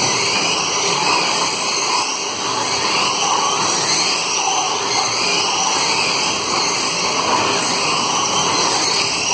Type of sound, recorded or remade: recorded